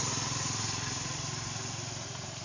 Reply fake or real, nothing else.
real